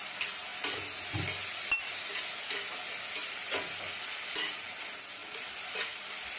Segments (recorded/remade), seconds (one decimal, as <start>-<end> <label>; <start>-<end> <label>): 0.0-6.4 recorded